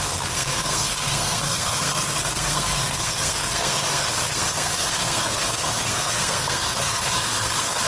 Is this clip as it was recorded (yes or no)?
no